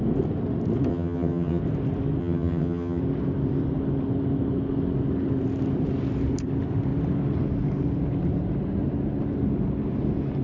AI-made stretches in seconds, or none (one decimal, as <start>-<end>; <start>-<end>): 0.9-1.6; 2.2-3.0